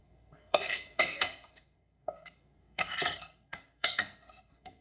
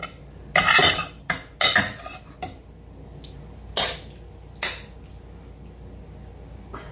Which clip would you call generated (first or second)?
first